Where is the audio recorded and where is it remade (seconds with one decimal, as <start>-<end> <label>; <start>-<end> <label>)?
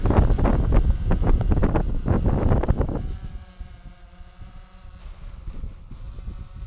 0.0-5.0 recorded; 5.0-6.0 remade; 6.0-6.7 recorded